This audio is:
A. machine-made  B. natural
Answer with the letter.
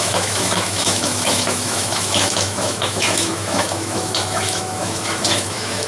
A